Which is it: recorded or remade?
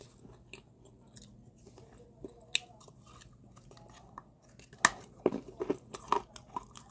recorded